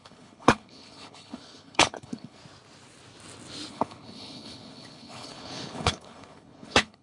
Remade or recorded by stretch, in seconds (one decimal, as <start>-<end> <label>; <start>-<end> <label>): 0.0-2.4 remade; 2.4-3.7 recorded; 3.7-7.0 remade